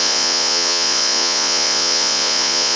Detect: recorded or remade remade